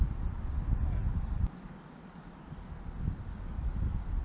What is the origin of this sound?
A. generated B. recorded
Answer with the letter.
B